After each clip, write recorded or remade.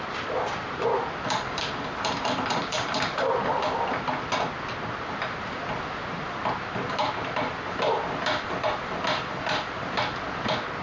remade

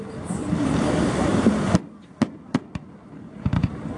recorded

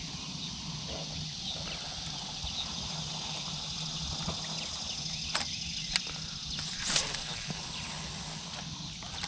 recorded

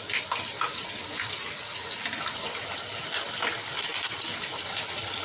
recorded